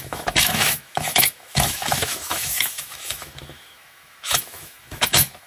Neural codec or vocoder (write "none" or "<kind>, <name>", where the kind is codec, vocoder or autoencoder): autoencoder, DAC-VAE